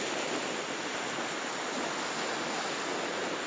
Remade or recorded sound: recorded